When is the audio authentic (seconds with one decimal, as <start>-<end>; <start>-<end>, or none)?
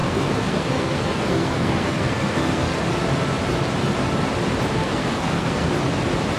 2.8-4.8; 5.7-6.4